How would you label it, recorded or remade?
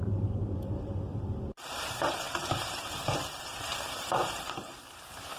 remade